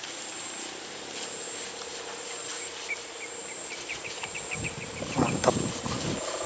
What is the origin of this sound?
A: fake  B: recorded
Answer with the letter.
B